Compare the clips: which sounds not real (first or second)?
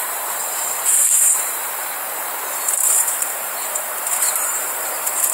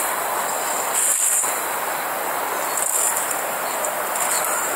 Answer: first